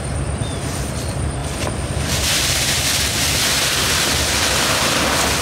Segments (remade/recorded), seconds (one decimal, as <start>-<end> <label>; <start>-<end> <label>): 0.0-1.4 recorded; 1.4-2.5 remade; 2.5-3.1 recorded; 3.1-4.3 remade; 4.3-5.4 recorded